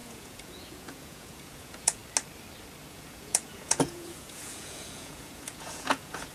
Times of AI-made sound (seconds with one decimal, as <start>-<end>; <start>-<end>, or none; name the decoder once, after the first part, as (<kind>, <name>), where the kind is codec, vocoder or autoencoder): 0.0-2.0 (vocoder, Vocos); 2.9-6.3